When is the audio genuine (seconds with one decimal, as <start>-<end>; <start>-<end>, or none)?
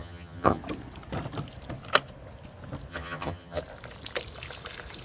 0.6-2.9; 3.6-5.0